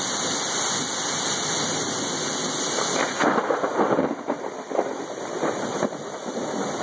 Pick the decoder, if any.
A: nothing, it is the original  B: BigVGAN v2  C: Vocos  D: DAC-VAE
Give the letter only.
A